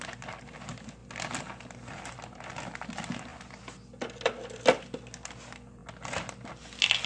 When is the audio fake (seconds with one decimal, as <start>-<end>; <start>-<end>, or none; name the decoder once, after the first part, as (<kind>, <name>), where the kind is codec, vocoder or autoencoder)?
none